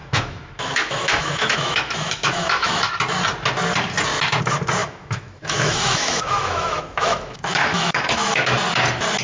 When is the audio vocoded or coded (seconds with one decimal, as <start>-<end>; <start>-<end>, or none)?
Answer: 0.0-2.9; 4.8-8.5